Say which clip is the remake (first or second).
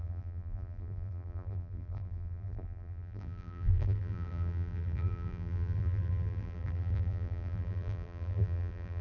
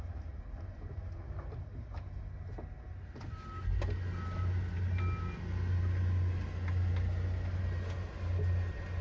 first